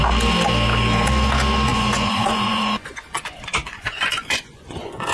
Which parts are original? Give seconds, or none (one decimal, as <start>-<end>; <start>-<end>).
0.0-1.7